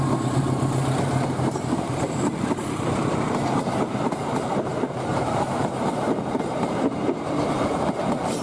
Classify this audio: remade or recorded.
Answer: remade